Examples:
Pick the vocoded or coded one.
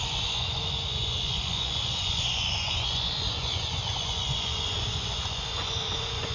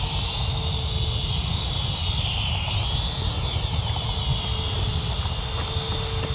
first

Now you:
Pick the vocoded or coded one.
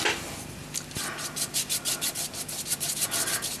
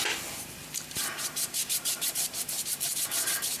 second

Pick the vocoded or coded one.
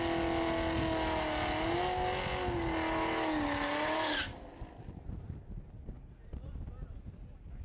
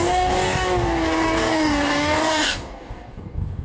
second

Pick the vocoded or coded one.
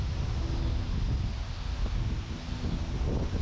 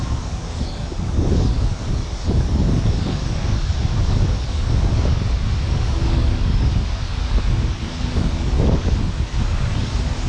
second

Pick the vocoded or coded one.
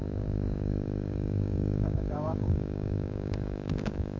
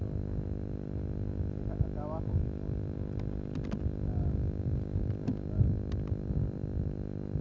first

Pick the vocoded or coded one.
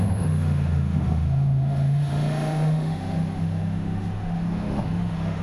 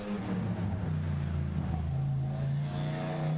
first